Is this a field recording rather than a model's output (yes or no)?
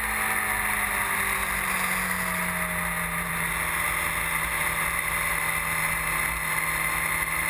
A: yes